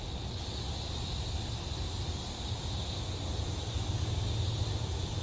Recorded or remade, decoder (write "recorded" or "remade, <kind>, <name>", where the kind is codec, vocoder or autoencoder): recorded